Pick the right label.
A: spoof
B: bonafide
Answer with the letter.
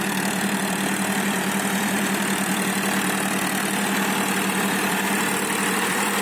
A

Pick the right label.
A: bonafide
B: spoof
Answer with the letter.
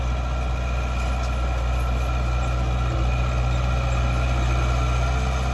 A